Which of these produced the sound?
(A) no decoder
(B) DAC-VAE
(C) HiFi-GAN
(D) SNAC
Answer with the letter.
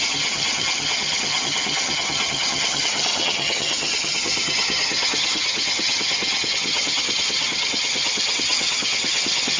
C